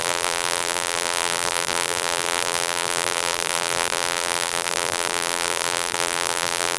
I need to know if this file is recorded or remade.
remade